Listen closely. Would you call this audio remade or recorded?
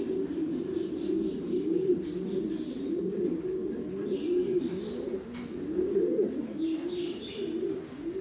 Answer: recorded